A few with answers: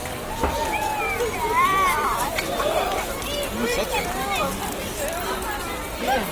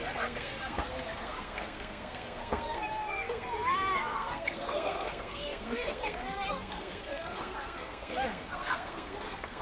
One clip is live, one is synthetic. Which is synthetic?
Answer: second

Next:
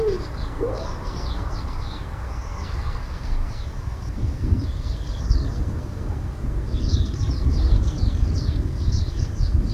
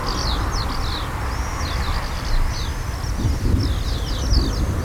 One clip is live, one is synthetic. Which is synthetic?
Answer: first